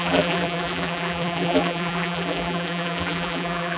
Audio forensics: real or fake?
fake